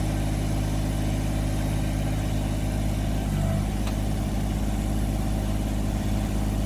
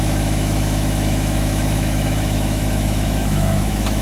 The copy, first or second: second